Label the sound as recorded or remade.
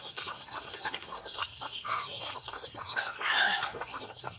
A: remade